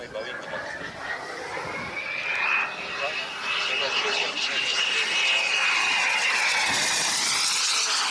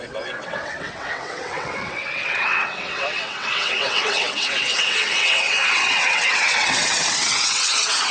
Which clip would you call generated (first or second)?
second